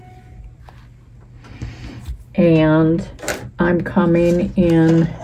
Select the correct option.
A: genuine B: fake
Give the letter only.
A